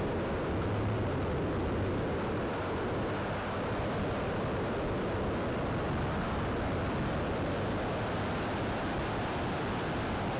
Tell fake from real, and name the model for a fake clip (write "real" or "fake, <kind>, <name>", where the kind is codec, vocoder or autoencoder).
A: real